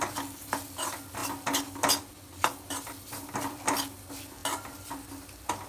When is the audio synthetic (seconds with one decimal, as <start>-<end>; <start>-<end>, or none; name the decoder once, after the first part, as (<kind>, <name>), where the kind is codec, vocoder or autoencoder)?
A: none